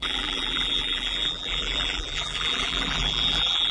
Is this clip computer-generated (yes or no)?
yes